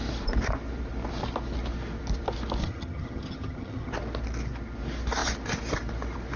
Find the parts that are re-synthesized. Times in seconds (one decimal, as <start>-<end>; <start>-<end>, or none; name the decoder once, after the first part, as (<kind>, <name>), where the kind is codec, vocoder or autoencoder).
2.6-3.9 (vocoder, HiFi-GAN)